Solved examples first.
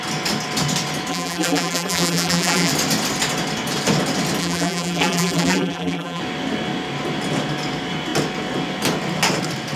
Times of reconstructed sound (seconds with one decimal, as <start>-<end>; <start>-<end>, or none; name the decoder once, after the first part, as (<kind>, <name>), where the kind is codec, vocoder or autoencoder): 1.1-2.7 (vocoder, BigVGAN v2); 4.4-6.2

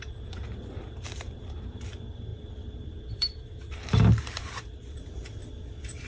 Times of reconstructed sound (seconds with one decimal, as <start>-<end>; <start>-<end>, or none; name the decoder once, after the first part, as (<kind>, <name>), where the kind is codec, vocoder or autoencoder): 0.0-5.4 (vocoder, BigVGAN v2)

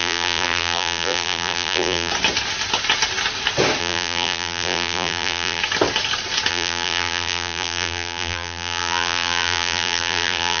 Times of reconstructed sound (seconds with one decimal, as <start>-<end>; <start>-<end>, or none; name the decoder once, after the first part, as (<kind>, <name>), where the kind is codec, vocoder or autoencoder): 0.0-2.1 (vocoder, BigVGAN v2); 3.8-5.6; 6.5-10.6

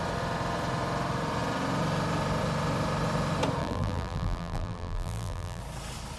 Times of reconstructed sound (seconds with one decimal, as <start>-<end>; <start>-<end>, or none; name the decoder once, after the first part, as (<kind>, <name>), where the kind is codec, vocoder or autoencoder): 3.6-5.6 (vocoder, BigVGAN v2)

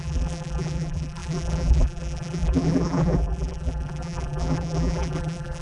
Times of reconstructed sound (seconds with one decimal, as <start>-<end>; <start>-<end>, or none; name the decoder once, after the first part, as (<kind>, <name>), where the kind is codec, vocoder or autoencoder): 0.0-5.6 (vocoder, BigVGAN v2)

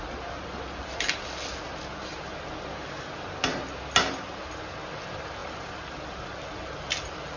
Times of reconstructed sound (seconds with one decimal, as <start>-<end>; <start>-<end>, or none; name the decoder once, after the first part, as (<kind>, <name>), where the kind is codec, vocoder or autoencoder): 5.4-7.4 (vocoder, BigVGAN v2)

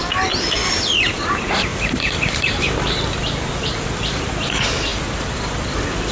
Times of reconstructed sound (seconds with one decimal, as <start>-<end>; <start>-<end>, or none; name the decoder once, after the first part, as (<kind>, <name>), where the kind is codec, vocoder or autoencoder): 0.6-1.2 (vocoder, BigVGAN v2); 1.7-4.3; 4.9-6.1